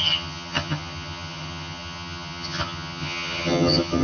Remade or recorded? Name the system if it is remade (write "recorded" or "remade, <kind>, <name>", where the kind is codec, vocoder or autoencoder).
remade, vocoder, HiFi-GAN